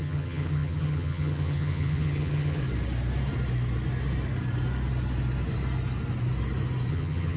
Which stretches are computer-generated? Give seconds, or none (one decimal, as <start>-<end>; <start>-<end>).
0.0-2.6; 6.9-7.4